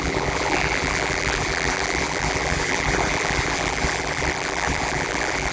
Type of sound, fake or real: fake